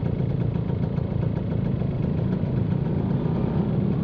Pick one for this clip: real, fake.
real